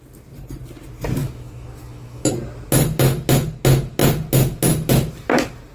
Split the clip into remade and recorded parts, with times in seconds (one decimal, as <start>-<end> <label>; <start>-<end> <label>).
0.0-1.2 recorded; 1.2-2.3 remade; 2.3-5.7 recorded